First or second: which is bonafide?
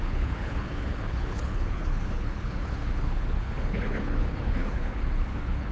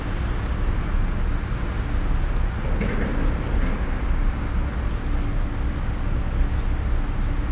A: second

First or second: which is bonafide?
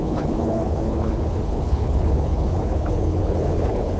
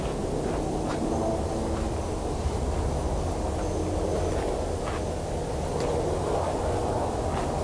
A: second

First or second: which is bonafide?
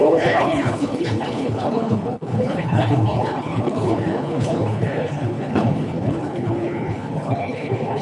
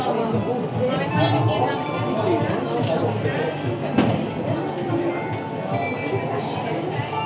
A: second